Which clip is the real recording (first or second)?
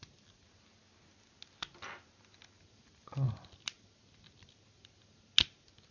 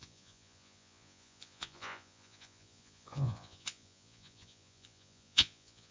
first